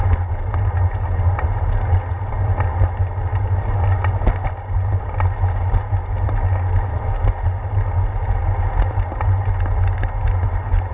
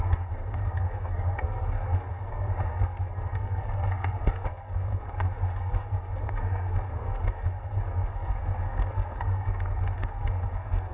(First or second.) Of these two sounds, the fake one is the second